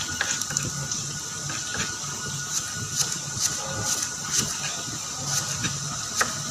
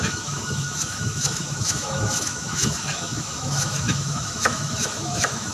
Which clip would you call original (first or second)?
first